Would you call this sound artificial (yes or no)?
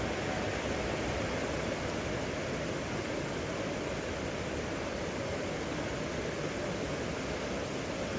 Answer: no